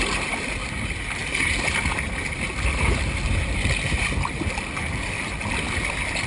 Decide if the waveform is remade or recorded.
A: recorded